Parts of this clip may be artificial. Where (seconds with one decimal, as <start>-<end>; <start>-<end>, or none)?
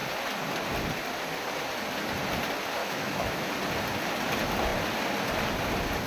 2.8-3.5